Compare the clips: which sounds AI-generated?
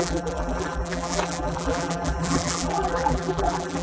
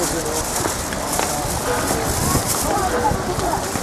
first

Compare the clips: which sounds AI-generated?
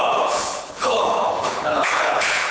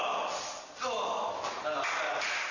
first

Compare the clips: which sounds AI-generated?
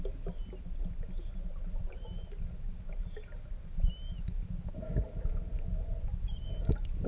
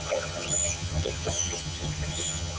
second